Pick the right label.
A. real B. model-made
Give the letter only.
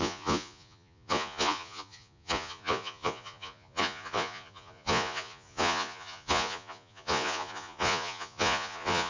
B